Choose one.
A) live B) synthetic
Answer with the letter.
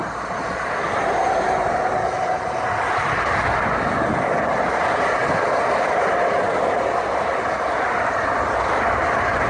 A